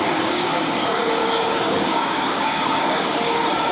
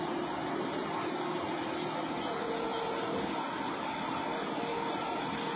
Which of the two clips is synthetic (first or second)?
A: first